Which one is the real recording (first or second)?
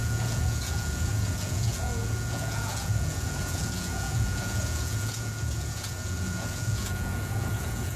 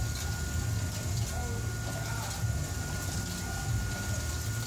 second